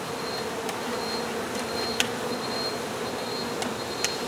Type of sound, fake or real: real